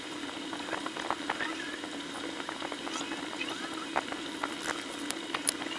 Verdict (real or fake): real